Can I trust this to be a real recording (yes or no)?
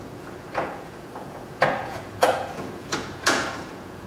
no